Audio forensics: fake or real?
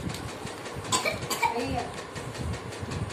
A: real